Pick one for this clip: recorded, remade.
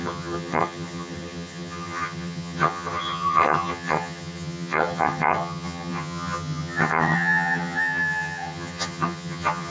remade